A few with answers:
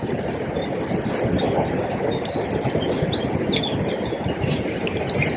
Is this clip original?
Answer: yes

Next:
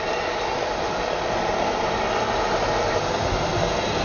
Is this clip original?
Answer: yes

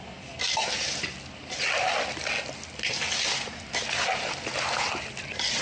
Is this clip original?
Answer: yes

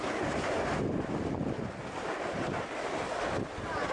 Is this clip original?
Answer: yes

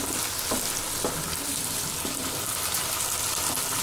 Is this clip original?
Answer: yes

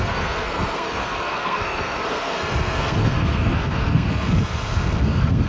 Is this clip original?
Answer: no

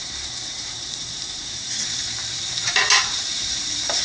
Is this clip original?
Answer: no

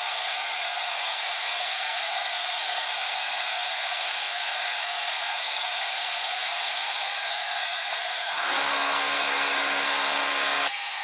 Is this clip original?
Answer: no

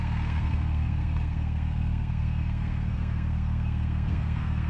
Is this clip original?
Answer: no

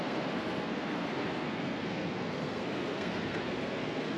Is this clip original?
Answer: no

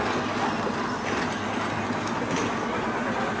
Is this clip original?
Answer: yes